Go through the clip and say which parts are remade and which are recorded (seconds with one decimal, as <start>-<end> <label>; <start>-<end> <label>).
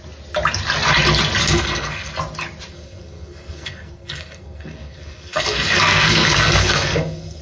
0.0-1.4 recorded; 1.4-2.1 remade; 2.1-2.7 recorded; 2.7-7.4 remade